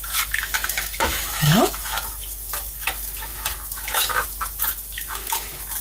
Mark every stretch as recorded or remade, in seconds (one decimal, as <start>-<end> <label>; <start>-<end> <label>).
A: 0.0-5.8 remade